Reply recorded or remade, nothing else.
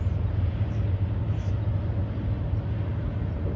recorded